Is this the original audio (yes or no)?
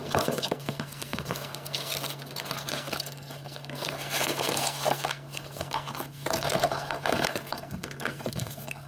no